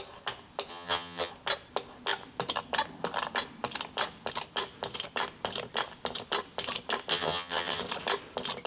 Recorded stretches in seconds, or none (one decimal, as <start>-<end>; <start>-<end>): 0.0-0.7; 1.3-7.1; 7.8-8.7